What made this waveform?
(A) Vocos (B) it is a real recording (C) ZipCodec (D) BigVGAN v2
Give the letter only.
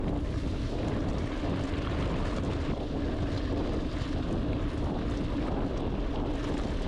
B